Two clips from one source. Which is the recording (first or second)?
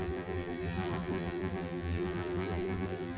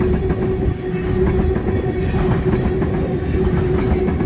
second